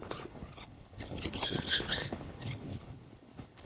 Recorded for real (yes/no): no